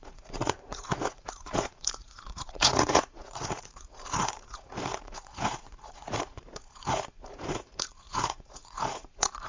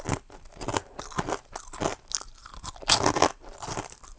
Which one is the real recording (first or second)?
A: second